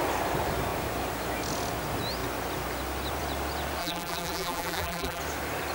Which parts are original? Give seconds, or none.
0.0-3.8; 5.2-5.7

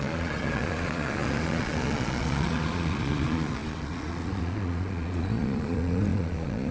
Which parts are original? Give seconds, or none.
none

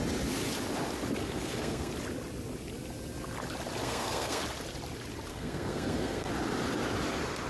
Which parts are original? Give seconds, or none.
0.0-1.2; 1.9-3.8; 4.4-5.3; 6.3-7.5